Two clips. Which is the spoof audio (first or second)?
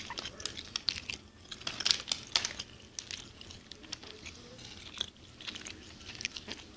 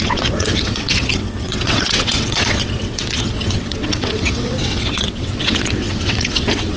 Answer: second